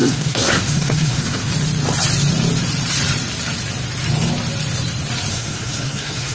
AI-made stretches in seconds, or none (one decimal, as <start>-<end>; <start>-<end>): 0.0-1.5; 5.3-6.3